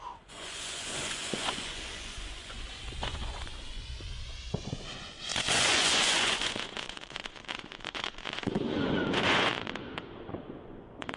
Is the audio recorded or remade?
remade